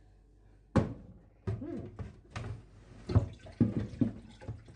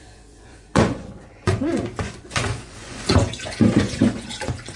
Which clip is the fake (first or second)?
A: second